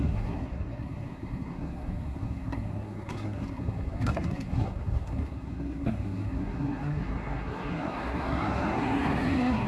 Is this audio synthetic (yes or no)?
yes